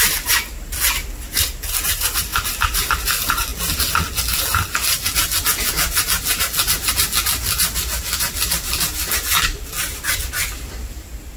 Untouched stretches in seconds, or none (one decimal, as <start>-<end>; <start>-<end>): 0.0-11.4